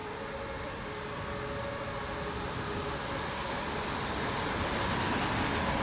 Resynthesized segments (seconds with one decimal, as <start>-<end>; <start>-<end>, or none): none